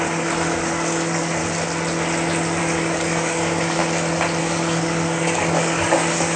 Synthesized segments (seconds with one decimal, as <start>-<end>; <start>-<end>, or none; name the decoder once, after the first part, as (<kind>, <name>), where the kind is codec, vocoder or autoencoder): 0.0-1.4 (codec, DAC); 2.6-3.8; 4.4-6.4